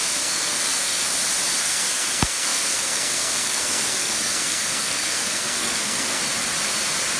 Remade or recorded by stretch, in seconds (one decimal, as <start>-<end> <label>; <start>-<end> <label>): 0.0-1.1 remade; 1.1-1.6 recorded; 1.6-6.2 remade; 6.2-7.2 recorded